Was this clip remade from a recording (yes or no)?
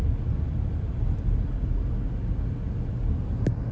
no